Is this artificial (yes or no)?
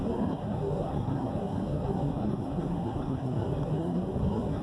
yes